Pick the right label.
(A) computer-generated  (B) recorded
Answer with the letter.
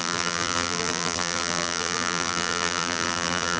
A